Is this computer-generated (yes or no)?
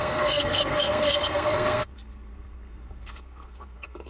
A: yes